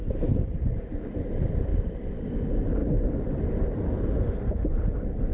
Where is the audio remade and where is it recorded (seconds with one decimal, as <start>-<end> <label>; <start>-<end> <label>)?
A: 0.0-1.7 recorded; 1.7-2.3 remade; 2.3-2.8 recorded; 2.8-3.6 remade; 3.6-5.3 recorded